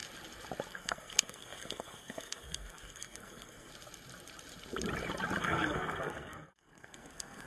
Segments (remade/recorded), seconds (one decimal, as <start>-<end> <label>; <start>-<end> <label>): 0.0-0.7 recorded; 0.7-3.7 remade; 3.7-5.4 recorded; 5.4-7.5 remade